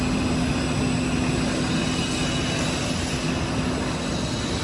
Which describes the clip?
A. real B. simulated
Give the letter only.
A